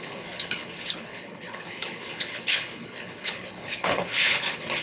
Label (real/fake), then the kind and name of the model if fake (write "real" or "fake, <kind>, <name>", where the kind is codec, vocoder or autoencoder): fake, codec, HILCodec